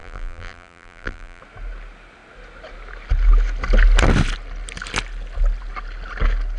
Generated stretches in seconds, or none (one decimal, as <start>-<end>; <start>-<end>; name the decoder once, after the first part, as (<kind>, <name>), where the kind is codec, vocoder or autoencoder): 0.0-1.4 (vocoder, BigVGAN v2)